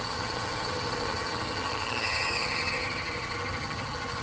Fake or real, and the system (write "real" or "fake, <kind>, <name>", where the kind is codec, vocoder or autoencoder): fake, vocoder, HiFi-GAN